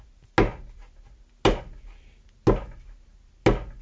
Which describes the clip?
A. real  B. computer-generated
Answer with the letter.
A